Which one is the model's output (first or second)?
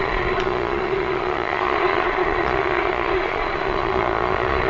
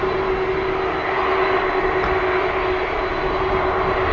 first